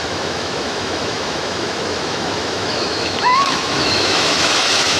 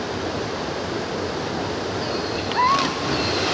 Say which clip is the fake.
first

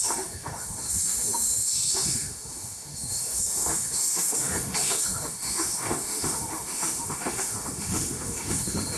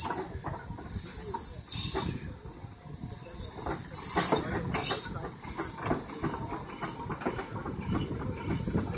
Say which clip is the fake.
first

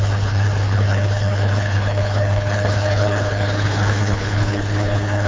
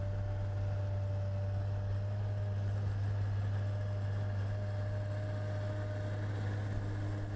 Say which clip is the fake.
first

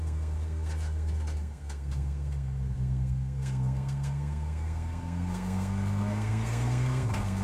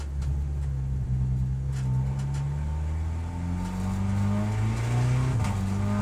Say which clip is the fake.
first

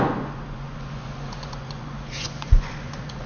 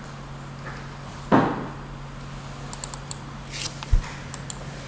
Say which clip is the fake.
first